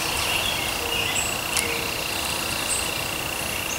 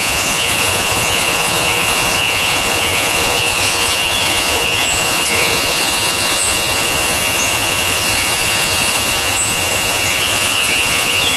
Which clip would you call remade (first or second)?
second